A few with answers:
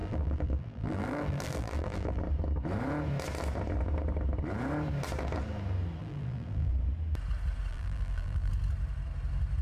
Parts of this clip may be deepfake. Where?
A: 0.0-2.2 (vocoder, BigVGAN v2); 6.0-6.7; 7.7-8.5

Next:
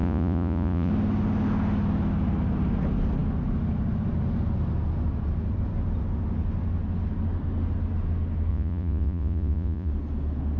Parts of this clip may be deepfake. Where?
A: 0.0-0.9 (vocoder, Vocos); 8.5-9.9

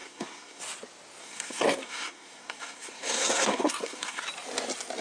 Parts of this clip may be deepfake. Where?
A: 0.0-0.6 (codec, SNAC); 1.2-4.2

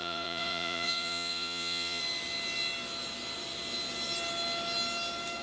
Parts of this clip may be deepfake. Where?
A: 0.0-2.0 (vocoder, Vocos)

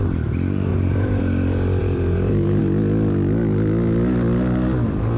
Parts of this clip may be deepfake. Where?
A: 0.7-1.2 (vocoder, BigVGAN v2); 1.8-2.6

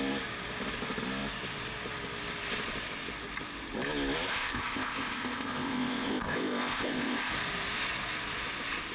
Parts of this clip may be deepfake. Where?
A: 4.3-7.3 (codec, ZipCodec)